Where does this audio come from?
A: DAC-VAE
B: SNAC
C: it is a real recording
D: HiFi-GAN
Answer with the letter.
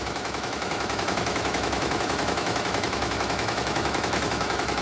A